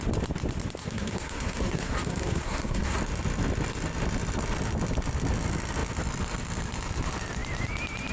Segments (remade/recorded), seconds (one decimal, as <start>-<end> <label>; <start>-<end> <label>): 0.0-0.8 recorded; 0.8-3.0 remade; 3.0-8.1 recorded